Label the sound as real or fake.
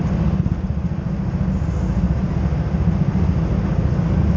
real